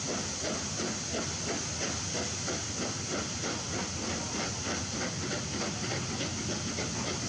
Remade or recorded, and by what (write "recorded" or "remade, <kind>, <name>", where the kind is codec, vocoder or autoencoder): recorded